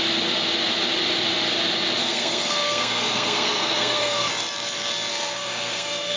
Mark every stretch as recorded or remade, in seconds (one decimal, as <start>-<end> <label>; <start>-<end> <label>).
0.0-2.0 recorded; 2.0-4.3 remade; 4.3-5.1 recorded; 5.1-6.2 remade